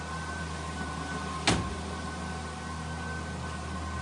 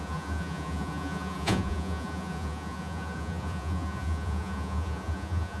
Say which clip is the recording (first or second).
first